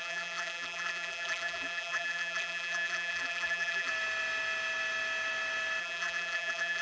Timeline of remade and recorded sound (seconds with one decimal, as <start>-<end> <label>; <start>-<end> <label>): 0.0-3.9 remade; 3.9-5.8 recorded; 5.8-6.8 remade